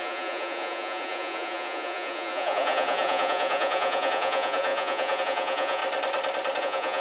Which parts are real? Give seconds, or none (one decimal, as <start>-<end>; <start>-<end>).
5.8-6.6